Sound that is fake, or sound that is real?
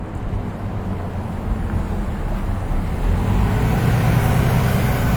real